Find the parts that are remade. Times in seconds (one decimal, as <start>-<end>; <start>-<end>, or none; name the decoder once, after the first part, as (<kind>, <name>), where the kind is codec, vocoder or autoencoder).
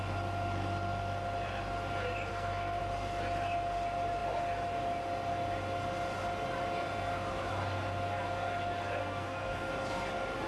2.3-2.8 (codec, SNAC); 9.0-9.7